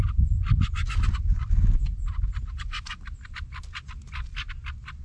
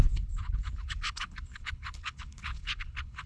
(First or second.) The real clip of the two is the first